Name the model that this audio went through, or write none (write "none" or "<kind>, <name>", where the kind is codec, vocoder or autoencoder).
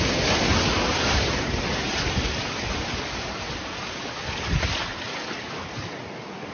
none